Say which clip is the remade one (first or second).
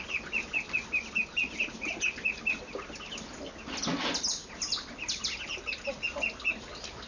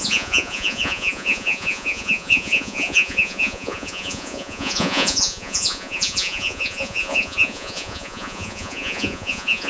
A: second